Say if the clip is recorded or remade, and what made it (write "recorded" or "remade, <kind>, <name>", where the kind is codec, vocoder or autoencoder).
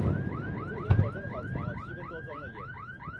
recorded